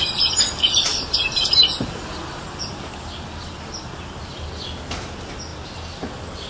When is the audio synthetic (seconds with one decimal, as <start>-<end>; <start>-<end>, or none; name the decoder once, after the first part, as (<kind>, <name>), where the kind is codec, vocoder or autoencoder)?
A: none